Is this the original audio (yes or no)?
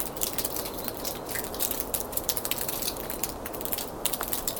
yes